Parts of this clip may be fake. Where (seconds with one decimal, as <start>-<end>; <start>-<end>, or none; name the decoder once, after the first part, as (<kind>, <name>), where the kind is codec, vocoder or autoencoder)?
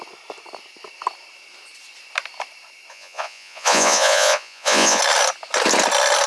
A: 2.9-5.0 (vocoder, Vocos)